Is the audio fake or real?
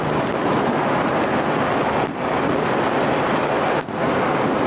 real